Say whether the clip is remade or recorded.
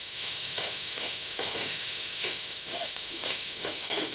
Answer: remade